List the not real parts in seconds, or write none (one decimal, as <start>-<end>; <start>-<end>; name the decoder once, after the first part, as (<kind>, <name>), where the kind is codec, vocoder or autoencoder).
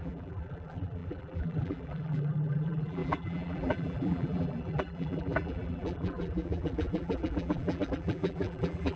0.0-9.0 (vocoder, BigVGAN v2)